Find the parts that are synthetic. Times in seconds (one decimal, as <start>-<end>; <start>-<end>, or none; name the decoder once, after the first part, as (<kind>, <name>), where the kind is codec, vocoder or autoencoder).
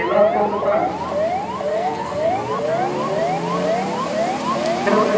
1.7-2.3 (codec, SNAC)